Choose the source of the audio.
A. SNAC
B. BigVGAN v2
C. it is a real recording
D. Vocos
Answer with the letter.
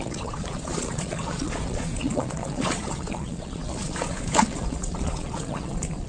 D